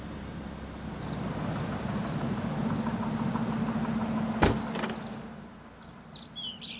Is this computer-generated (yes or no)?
no